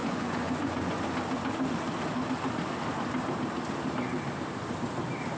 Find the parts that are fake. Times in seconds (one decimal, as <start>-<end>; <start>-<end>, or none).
0.0-1.0